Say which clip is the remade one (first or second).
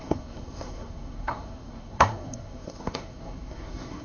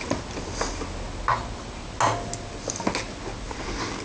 first